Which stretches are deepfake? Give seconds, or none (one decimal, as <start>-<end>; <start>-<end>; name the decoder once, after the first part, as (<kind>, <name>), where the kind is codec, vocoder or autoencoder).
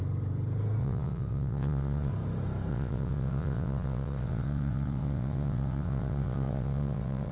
0.8-2.1 (vocoder, WaveNeXt); 2.7-7.3